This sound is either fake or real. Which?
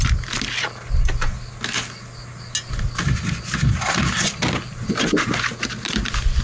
real